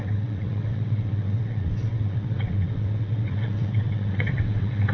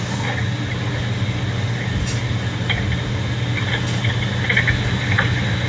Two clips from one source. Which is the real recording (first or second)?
second